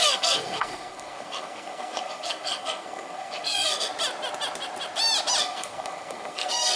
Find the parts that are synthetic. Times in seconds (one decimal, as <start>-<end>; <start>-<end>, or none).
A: 0.0-3.9; 5.4-6.8